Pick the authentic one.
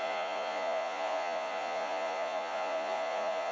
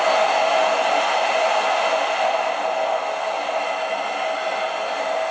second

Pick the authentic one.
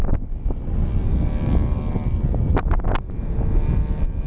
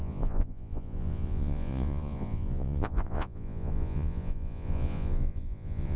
first